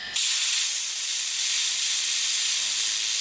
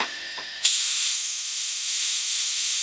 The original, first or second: first